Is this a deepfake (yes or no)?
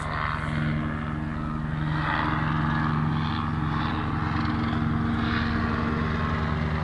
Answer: no